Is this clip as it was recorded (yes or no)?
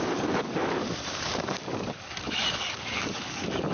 no